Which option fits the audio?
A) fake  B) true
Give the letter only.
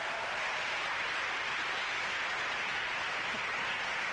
B